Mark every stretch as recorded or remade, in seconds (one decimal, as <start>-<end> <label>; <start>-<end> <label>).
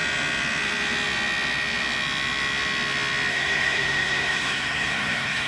0.0-3.3 recorded; 3.3-5.5 remade